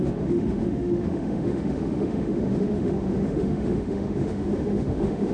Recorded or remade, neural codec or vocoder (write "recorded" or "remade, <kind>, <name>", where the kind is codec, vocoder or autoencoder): remade, autoencoder, DAC-VAE